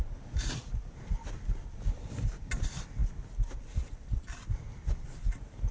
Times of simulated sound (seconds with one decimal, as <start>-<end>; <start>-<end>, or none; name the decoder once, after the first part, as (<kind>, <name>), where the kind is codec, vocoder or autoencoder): none